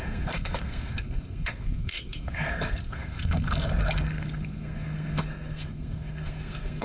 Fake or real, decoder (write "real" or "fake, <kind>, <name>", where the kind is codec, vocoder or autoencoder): fake, codec, SNAC